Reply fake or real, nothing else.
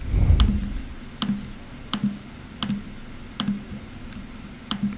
real